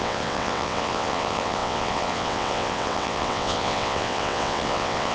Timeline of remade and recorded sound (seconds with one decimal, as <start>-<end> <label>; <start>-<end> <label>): 0.0-5.1 remade